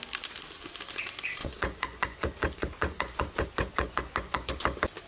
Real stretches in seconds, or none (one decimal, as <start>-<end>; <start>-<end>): 0.0-1.4; 4.5-5.1